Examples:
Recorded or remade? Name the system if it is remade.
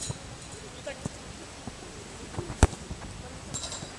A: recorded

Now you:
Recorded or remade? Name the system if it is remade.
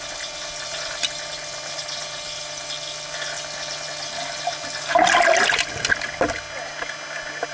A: recorded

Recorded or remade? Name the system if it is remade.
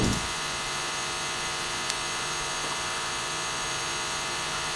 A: remade, vocoder, Vocos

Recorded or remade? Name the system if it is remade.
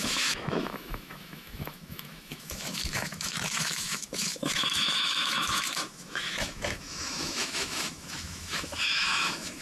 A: remade, autoencoder, DAC-VAE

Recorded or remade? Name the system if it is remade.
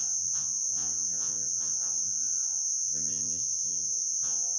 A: remade, vocoder, Vocos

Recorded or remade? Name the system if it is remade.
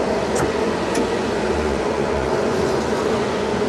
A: remade, vocoder, Vocos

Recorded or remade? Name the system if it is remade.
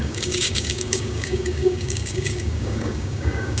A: remade, codec, DAC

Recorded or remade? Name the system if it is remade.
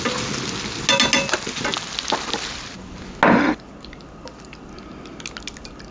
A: recorded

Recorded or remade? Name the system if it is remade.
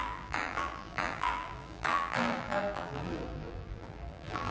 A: remade, vocoder, BigVGAN v2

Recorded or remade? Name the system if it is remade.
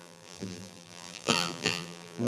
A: remade, vocoder, BigVGAN v2